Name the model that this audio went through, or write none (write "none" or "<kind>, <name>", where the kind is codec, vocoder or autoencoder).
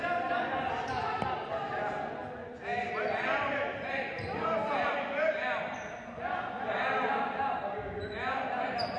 none